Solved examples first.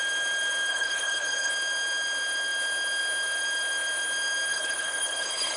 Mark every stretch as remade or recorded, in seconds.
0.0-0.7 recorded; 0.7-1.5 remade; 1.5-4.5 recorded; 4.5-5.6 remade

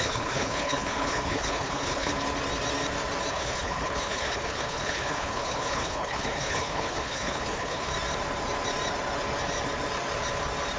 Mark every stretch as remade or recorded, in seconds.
0.0-2.1 remade; 2.1-3.3 recorded; 3.3-7.9 remade; 7.9-10.8 recorded